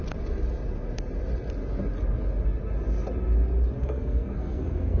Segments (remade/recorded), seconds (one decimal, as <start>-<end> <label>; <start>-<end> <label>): 0.0-3.8 recorded; 3.8-5.0 remade